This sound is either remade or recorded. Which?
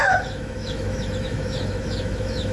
remade